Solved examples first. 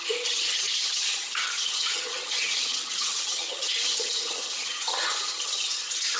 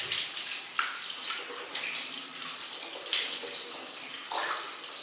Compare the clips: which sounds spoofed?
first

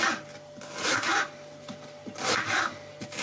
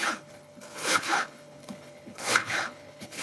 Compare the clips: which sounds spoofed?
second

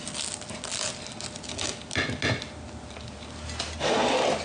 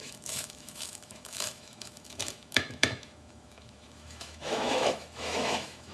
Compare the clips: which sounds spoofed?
second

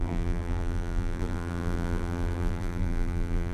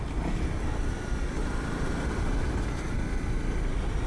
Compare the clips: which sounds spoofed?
first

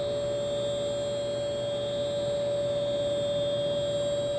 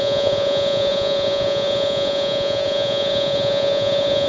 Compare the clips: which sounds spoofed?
second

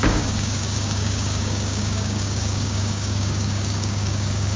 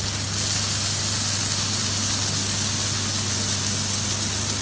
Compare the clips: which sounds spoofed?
first